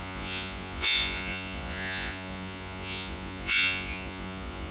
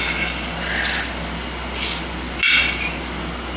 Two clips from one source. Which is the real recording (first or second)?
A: second